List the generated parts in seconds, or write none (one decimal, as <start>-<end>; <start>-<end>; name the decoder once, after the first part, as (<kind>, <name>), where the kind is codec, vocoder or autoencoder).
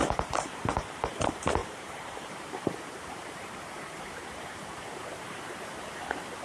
0.0-1.1 (vocoder, BigVGAN v2); 1.6-5.4